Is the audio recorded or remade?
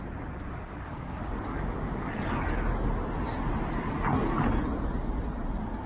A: recorded